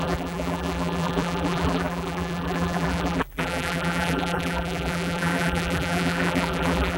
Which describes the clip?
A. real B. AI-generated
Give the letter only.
B